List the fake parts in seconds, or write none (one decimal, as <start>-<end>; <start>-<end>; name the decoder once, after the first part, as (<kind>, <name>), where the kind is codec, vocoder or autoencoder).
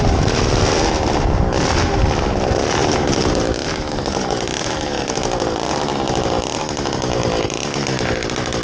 none